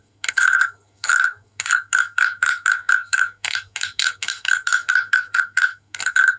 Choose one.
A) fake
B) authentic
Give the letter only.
A